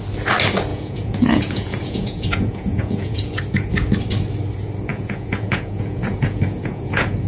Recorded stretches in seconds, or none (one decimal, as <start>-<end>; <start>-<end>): 0.0-0.7; 3.4-4.9